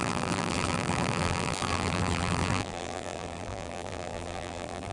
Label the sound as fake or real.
fake